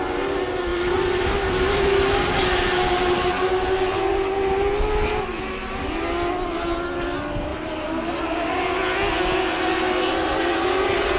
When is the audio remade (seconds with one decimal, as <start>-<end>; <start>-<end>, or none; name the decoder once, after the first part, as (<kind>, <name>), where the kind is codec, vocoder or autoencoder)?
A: 0.7-3.5 (vocoder, BigVGAN v2); 7.5-8.6; 9.7-10.4